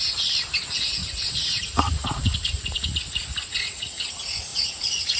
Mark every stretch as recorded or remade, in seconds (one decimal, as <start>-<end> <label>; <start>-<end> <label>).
0.0-1.0 recorded; 1.0-4.1 remade; 4.1-4.5 recorded; 4.5-5.2 remade